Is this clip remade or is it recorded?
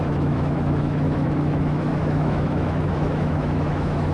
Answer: remade